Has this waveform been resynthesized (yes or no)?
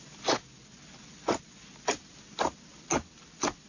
no